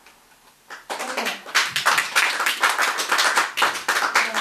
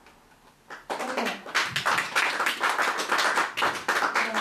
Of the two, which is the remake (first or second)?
first